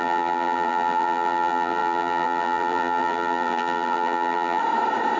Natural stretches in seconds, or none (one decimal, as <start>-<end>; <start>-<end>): 4.6-5.2